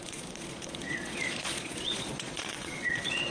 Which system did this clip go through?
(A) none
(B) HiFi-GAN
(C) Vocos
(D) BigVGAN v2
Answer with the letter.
C